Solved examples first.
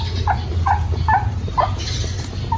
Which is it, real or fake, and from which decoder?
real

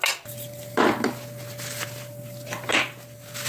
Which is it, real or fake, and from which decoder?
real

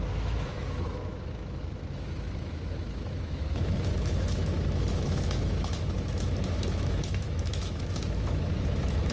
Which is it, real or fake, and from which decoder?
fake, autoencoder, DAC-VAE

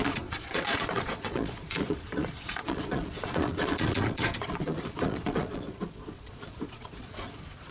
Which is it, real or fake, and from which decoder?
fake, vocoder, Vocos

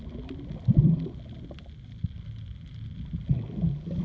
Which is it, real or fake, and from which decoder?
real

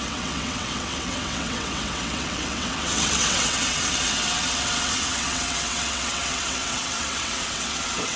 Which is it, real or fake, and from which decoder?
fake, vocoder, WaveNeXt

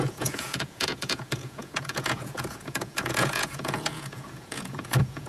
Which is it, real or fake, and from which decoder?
fake, vocoder, Vocos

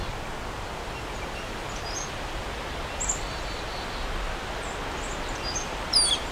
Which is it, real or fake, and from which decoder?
real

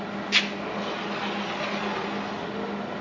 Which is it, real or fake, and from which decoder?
real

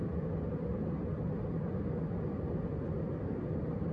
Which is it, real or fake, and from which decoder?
real